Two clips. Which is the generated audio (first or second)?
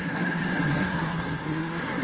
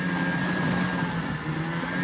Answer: first